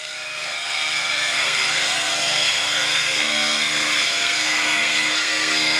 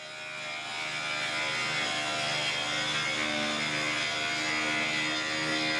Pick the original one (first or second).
second